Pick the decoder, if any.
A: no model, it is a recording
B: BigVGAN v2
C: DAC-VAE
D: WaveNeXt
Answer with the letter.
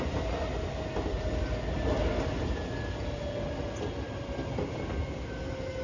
A